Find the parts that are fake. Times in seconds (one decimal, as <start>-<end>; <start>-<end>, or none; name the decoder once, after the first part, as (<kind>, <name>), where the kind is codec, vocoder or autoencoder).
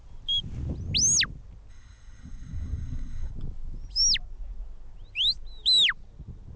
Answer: 1.7-3.3 (codec, SNAC)